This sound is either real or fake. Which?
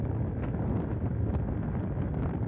real